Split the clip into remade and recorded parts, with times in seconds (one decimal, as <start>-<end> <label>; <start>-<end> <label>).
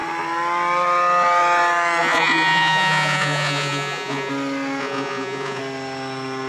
0.0-2.0 recorded; 2.0-4.3 remade; 4.3-4.8 recorded; 4.8-5.6 remade; 5.6-6.5 recorded